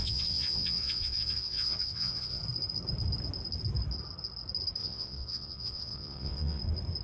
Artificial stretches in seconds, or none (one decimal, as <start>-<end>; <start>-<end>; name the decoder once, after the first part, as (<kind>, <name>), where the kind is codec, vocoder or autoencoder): 0.0-2.4 (vocoder, WaveNeXt); 4.8-6.6